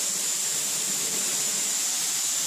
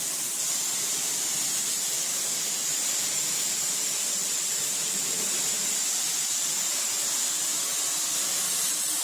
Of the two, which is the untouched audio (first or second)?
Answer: first